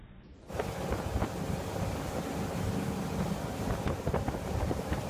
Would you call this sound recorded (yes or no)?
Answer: yes